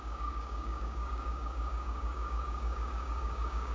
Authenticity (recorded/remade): remade